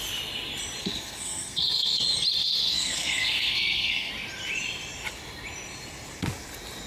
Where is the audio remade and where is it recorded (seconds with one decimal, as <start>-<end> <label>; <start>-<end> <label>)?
0.0-0.8 recorded; 0.8-2.0 remade; 2.0-2.4 recorded; 2.4-4.1 remade; 4.1-6.9 recorded